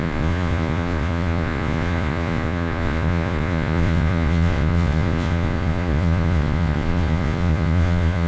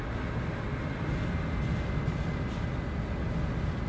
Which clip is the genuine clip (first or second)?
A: second